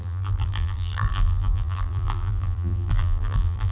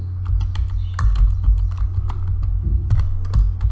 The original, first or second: second